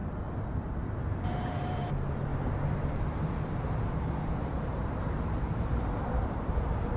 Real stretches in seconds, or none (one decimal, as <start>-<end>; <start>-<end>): 0.0-0.5